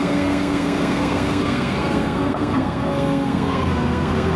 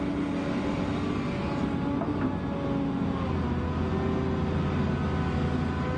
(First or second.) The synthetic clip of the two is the first